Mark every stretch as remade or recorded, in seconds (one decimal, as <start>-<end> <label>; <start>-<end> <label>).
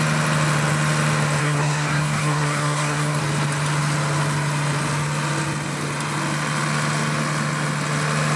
0.0-1.4 recorded; 1.4-3.2 remade; 3.2-8.4 recorded